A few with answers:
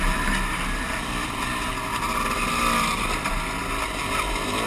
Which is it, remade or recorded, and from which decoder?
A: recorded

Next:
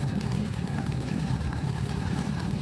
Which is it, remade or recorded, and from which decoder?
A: remade, codec, SNAC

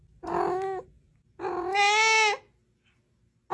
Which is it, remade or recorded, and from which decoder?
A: recorded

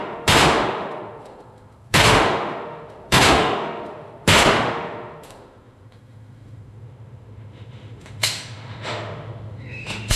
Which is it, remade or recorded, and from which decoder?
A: remade, autoencoder, DAC-VAE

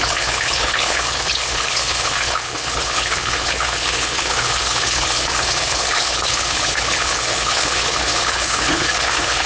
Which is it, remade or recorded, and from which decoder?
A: remade, codec, HILCodec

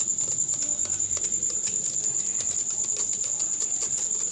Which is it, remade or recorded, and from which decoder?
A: recorded